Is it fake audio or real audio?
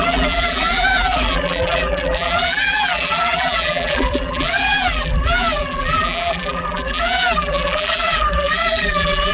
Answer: fake